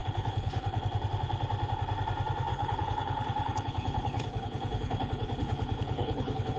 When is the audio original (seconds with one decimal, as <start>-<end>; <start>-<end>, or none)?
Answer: 0.8-2.5